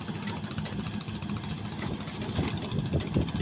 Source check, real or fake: real